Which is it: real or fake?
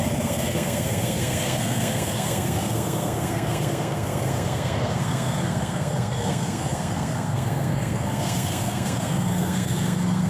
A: fake